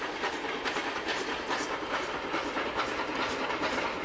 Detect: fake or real real